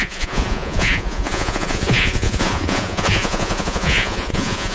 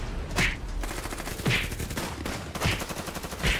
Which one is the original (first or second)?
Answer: second